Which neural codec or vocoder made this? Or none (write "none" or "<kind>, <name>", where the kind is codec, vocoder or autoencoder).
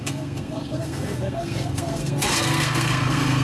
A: codec, SNAC